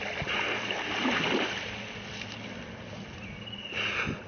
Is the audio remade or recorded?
recorded